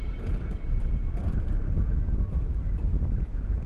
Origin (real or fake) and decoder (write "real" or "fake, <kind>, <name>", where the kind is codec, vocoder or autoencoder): fake, vocoder, BigVGAN v2